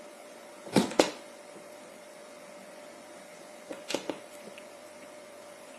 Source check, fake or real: fake